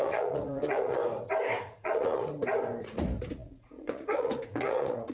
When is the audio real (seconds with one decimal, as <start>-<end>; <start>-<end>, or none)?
1.0-1.6; 2.3-2.8